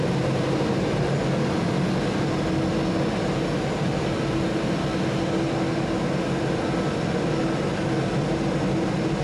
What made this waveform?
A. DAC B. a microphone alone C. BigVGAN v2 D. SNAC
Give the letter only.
B